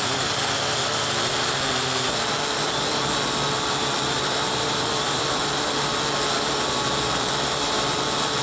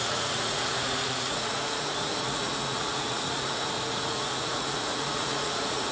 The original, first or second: first